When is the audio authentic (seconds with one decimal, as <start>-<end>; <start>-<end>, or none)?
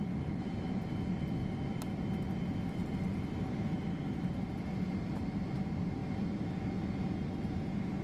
6.0-7.4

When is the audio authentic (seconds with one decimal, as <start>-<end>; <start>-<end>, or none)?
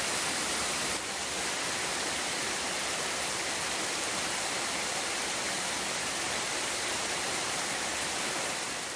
0.0-2.4; 5.3-9.0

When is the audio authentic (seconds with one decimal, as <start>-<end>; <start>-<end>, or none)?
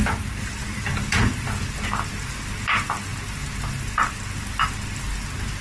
0.0-5.6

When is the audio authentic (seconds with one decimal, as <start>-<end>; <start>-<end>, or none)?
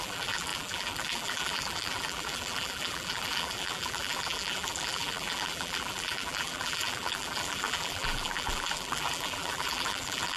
none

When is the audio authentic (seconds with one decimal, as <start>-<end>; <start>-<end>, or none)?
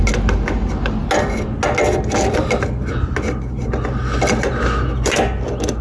0.0-5.8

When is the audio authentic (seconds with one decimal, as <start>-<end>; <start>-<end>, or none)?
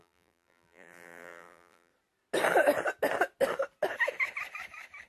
1.9-5.1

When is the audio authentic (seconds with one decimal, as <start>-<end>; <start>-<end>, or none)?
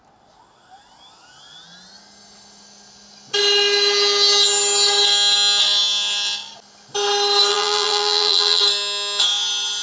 0.0-7.5; 8.6-9.8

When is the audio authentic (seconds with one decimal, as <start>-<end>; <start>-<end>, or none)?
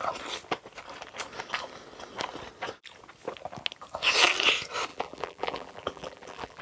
0.0-4.9